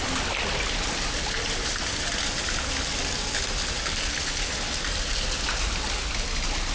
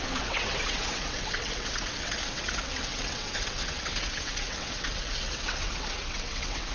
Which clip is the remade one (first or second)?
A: second